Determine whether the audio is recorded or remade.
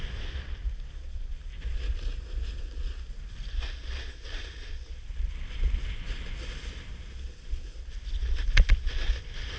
recorded